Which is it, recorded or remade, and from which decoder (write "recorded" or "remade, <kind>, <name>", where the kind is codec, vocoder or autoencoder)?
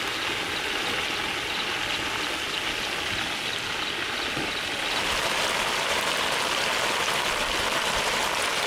recorded